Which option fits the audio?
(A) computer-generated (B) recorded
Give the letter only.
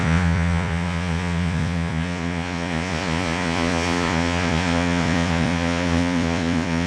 A